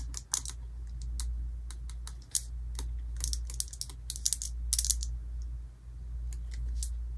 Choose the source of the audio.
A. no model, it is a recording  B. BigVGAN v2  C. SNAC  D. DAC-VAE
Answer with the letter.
A